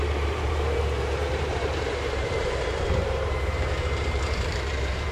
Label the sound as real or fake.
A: fake